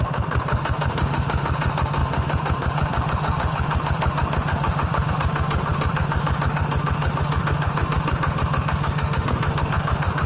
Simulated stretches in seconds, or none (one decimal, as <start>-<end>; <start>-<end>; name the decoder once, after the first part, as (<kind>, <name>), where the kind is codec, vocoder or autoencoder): 0.0-10.3 (autoencoder, DAC-VAE)